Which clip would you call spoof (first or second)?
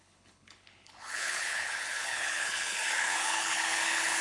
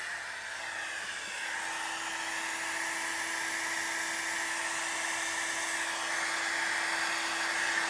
first